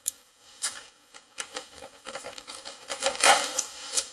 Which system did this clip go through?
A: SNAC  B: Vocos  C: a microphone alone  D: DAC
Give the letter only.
D